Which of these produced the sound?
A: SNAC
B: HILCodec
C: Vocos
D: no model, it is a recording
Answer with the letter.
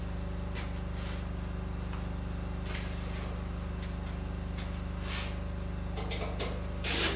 D